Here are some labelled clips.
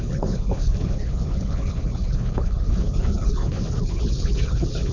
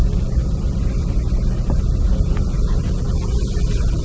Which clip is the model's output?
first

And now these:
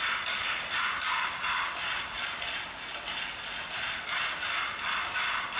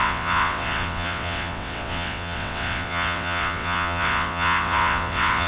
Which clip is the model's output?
second